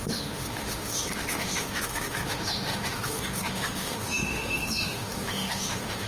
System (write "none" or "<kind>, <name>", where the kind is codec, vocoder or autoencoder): autoencoder, DAC-VAE